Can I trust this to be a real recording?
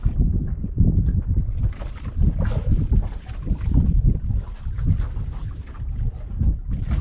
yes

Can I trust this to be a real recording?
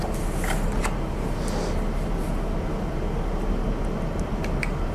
yes